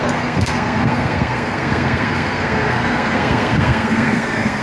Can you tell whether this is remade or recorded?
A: remade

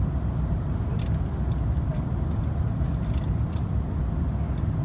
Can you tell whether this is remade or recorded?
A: recorded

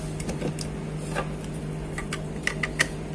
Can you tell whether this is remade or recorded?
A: recorded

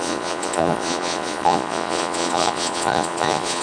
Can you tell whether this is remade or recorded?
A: remade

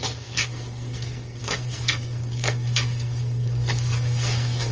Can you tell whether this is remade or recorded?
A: remade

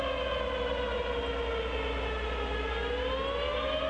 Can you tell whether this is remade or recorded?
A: recorded